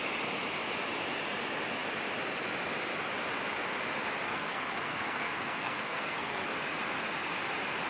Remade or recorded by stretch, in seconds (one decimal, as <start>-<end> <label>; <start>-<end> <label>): 0.0-4.3 recorded; 4.3-6.5 remade; 6.5-7.9 recorded